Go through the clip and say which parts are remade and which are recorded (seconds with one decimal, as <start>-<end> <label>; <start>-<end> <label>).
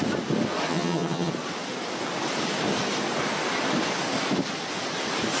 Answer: 0.0-0.7 recorded; 0.7-1.3 remade; 1.3-5.4 recorded